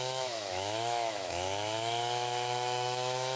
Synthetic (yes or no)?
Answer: yes